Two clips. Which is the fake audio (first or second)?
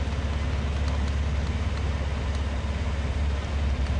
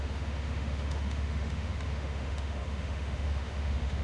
second